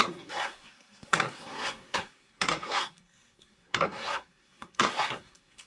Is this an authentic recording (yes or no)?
no